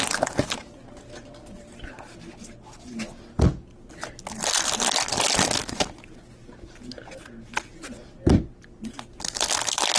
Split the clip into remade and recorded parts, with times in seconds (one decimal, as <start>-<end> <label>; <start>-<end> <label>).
0.0-10.0 recorded